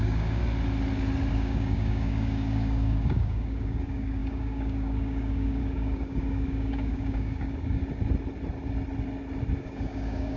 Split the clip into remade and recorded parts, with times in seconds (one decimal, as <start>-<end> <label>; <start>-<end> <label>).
0.0-0.4 remade; 0.4-1.3 recorded; 1.3-7.8 remade; 7.8-9.6 recorded; 9.6-10.4 remade